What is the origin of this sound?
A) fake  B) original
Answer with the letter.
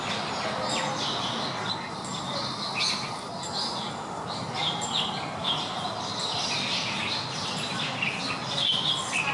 B